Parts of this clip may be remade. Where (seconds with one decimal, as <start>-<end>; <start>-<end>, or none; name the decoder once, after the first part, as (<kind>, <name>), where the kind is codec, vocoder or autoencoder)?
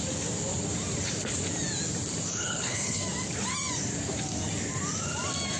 2.3-3.0 (codec, HILCodec)